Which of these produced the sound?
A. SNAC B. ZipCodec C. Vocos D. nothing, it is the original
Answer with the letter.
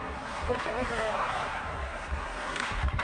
A